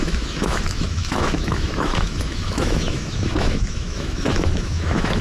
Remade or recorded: remade